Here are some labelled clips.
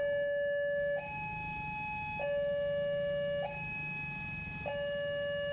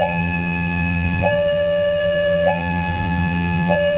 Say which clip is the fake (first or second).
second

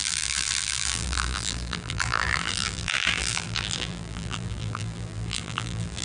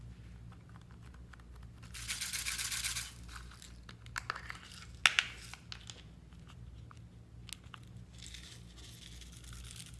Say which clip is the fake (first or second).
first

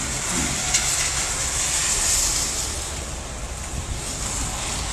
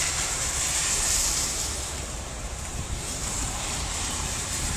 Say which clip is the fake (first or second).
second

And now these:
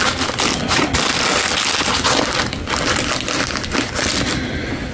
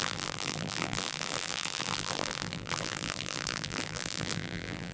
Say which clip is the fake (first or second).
second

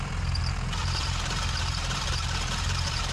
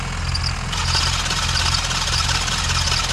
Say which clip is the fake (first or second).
first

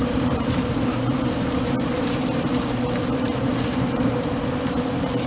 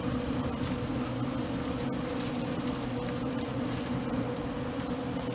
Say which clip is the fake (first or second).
first